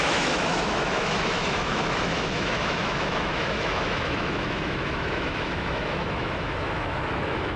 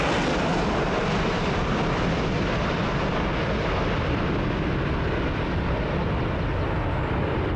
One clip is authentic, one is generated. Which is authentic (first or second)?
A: second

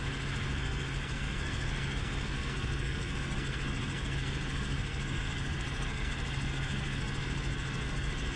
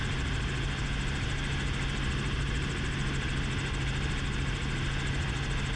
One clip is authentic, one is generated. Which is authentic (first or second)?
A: second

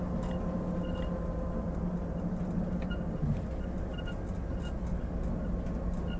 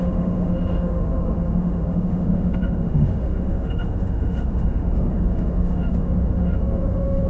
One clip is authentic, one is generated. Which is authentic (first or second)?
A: first